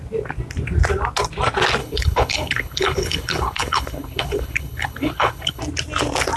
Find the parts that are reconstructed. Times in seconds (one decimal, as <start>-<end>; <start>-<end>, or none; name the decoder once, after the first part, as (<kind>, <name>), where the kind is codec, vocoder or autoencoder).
1.8-5.6 (codec, HILCodec)